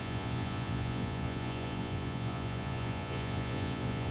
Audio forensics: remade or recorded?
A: remade